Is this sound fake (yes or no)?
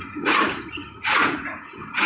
yes